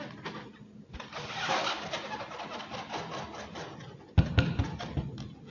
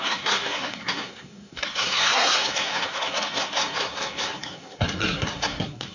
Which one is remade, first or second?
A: second